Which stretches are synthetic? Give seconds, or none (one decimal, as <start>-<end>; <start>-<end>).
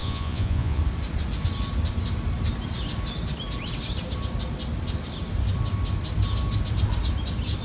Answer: 0.0-0.8